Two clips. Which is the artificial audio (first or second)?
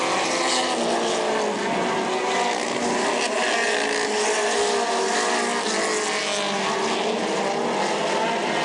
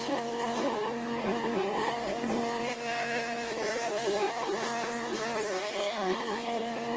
second